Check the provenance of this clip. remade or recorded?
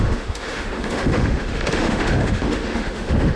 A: remade